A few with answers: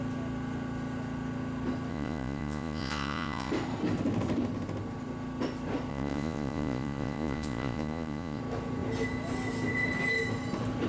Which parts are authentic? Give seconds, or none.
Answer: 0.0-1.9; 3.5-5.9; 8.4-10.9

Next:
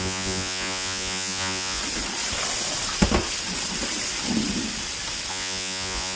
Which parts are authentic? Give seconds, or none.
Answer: 1.8-5.3

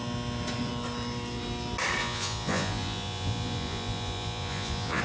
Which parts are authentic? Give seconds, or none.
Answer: 0.0-2.0